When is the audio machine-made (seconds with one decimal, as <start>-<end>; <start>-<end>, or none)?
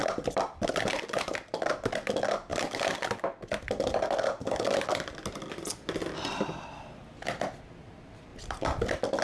0.0-1.0